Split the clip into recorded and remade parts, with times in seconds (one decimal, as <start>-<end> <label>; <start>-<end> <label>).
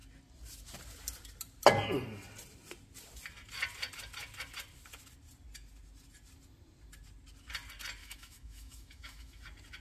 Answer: 0.0-8.0 recorded; 8.0-9.4 remade; 9.4-9.8 recorded